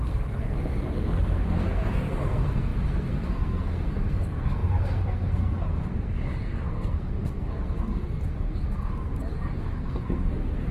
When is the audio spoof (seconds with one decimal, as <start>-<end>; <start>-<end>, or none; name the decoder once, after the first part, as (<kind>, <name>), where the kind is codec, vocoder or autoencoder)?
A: 0.0-10.7 (codec, SNAC)